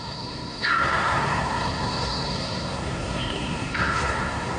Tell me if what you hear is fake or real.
fake